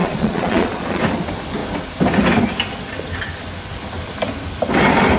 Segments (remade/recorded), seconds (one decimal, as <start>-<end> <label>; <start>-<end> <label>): 0.0-1.0 remade; 1.0-5.2 recorded